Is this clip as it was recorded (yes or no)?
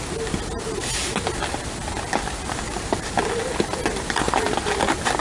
yes